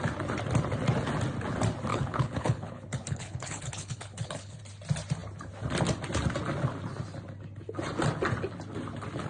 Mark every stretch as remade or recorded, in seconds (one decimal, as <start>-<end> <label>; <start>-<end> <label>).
0.0-1.9 recorded; 1.9-4.6 remade; 4.6-9.3 recorded